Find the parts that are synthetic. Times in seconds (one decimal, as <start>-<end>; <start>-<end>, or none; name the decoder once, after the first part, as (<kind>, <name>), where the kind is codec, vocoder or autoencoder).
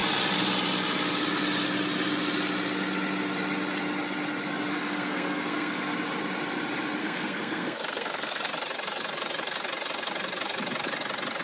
4.7-5.8 (codec, SNAC); 7.0-8.4